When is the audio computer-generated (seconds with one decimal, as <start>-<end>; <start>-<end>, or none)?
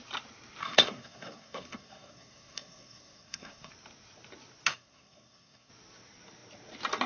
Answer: 0.6-3.7; 4.7-5.7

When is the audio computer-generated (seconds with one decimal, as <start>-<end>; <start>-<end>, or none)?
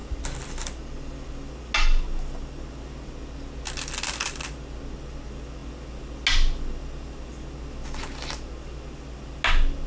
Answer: none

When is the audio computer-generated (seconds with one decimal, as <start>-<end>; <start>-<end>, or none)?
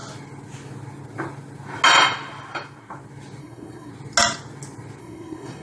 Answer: 3.4-3.9; 5.0-5.6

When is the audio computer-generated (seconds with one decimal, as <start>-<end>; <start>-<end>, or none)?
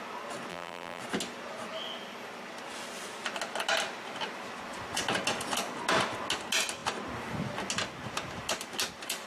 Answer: 0.5-1.0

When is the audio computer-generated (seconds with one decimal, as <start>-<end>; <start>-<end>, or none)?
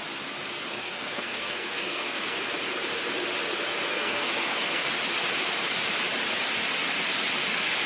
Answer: 0.7-2.4; 3.9-4.9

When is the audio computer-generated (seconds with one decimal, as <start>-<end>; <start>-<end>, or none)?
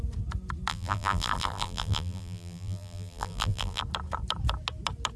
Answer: 0.7-3.8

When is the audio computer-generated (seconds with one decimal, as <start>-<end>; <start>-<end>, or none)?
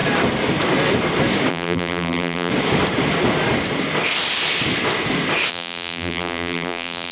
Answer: 1.5-2.5; 5.5-7.1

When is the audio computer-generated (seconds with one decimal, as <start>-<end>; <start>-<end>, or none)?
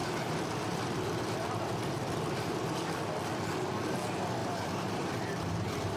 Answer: 4.4-6.0